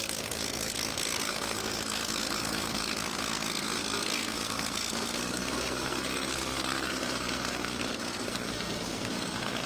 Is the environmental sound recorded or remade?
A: remade